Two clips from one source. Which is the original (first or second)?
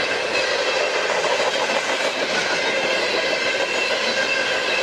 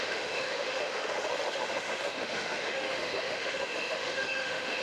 first